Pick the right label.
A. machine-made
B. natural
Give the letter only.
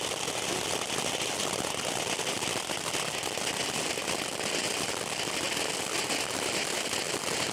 B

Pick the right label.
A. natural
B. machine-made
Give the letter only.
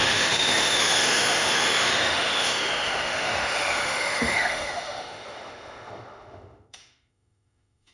B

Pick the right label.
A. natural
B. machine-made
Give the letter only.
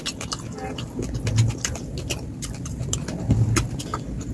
A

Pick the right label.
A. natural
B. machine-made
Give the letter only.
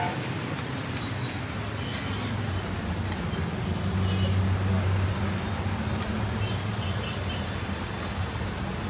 A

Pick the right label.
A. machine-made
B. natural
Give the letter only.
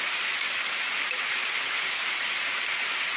B